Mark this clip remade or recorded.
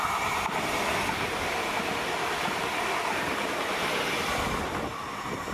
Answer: recorded